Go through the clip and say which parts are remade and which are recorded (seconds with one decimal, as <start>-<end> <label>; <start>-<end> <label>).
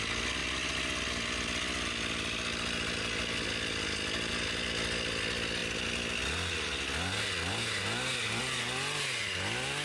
0.0-9.8 recorded